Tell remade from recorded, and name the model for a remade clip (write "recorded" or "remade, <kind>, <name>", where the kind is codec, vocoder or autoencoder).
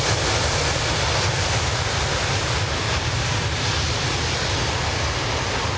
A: recorded